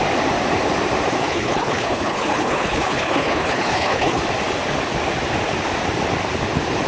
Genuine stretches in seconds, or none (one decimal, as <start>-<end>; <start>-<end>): 0.0-1.2; 4.2-6.9